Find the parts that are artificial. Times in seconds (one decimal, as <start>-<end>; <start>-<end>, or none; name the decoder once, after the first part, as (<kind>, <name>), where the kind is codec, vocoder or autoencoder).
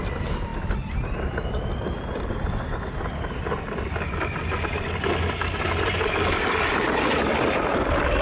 none